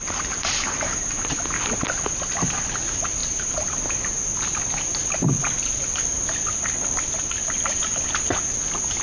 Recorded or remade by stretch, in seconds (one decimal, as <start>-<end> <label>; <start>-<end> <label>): 0.0-9.0 recorded